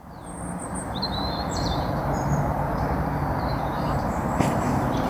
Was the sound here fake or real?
fake